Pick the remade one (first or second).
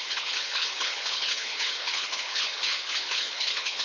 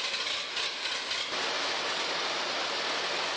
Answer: first